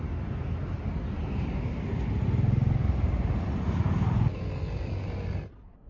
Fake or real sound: real